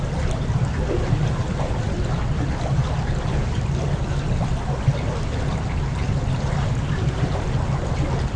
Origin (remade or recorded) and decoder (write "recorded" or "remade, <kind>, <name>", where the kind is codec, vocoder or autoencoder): recorded